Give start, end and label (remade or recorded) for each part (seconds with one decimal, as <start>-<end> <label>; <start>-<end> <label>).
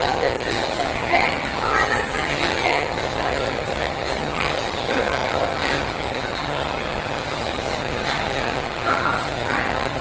0.0-10.0 remade